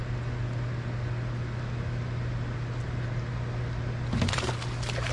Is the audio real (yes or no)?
yes